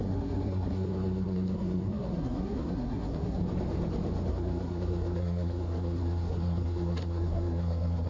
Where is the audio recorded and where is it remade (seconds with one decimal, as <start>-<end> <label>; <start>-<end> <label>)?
0.0-3.4 remade; 3.4-4.3 recorded; 4.3-8.1 remade